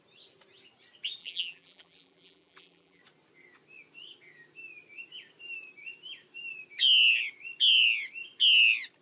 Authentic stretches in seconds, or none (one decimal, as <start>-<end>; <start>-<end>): 0.0-1.2; 3.0-9.0